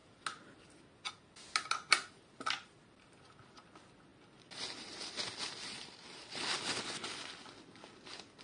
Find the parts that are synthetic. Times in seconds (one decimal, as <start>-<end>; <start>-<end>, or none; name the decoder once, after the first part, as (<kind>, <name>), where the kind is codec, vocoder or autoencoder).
none